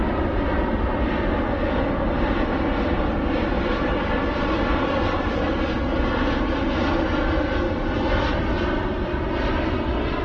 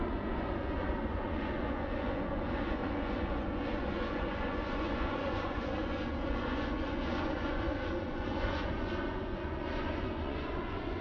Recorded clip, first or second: first